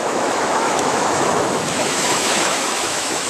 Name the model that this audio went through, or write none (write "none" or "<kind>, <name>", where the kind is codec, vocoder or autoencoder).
autoencoder, DAC-VAE